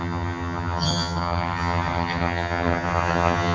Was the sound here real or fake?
fake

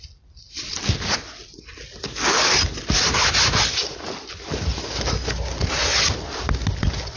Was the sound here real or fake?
real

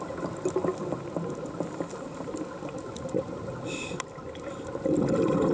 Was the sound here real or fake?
real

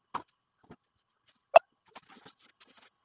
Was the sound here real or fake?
real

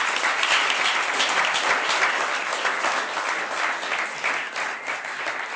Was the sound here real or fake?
real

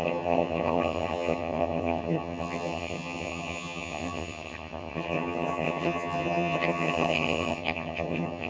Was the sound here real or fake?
fake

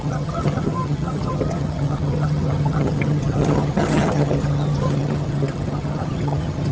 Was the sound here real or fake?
fake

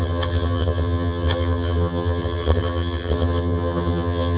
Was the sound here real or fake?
fake